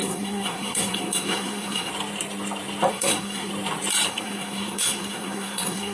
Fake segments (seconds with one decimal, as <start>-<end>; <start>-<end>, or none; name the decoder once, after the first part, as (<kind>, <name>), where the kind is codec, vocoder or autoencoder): 0.0-1.9 (codec, SNAC); 2.9-3.5; 4.1-5.9